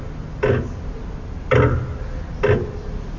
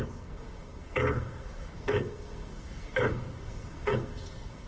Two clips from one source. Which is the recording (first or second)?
first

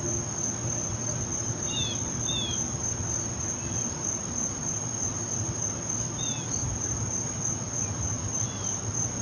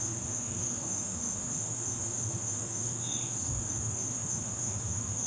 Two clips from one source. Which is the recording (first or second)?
first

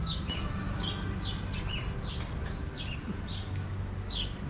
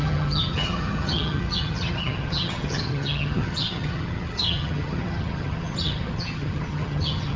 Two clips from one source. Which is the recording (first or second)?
first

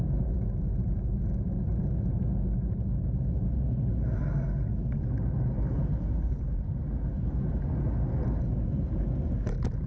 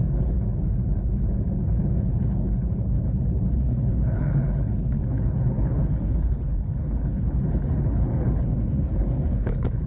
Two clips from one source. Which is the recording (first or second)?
first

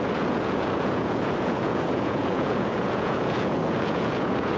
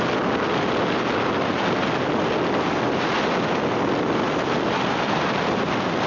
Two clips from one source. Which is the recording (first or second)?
second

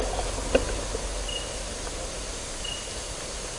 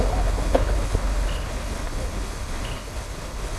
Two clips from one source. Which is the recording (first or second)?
first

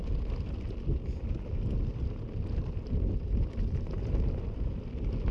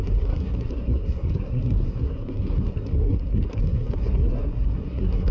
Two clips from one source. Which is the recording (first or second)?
first